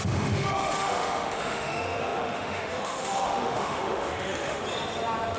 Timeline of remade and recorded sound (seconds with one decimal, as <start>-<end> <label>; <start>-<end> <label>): 0.0-4.6 remade; 4.6-5.4 recorded